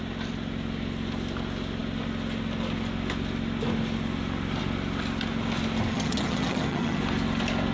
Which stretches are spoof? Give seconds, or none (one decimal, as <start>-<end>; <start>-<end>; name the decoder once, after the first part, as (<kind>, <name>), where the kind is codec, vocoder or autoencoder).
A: 5.9-7.0 (vocoder, HiFi-GAN)